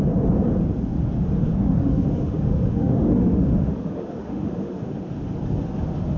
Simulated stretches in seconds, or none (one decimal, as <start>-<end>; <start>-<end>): 1.5-4.8